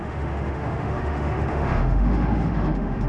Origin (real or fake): fake